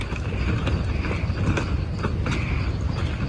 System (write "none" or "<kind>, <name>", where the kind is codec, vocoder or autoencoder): none